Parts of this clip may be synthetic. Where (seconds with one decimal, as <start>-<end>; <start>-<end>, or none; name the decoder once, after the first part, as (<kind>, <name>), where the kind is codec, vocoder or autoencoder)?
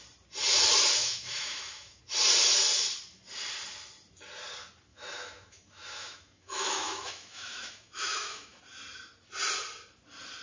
1.0-2.0 (autoencoder, DAC-VAE); 4.9-8.6